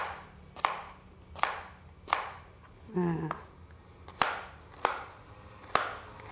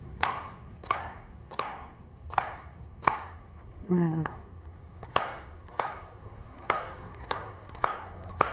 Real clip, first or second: first